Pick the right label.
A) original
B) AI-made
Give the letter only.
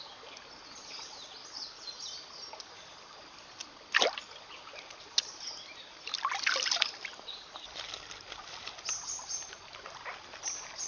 A